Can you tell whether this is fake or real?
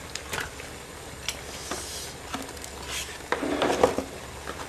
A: real